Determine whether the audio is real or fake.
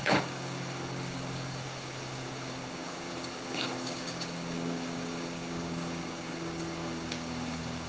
fake